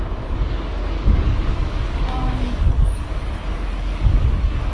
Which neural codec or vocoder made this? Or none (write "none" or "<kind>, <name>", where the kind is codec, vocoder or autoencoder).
codec, DAC